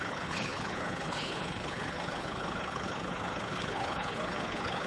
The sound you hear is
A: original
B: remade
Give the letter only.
B